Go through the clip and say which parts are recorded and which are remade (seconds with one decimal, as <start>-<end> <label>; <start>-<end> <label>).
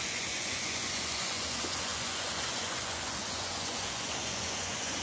0.0-5.0 remade